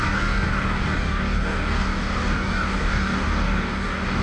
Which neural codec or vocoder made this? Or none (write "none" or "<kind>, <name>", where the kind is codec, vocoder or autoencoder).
codec, DAC